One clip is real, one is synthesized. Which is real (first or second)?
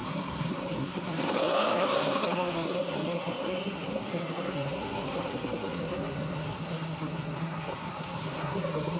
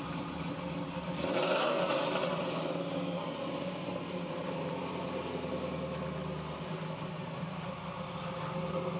second